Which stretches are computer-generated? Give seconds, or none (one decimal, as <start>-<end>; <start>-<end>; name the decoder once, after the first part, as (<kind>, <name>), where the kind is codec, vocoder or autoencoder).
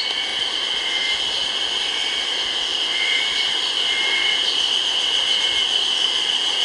none